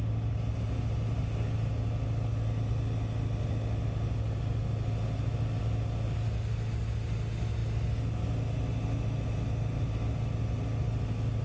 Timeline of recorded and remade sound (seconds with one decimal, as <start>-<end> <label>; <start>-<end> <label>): 0.0-11.4 recorded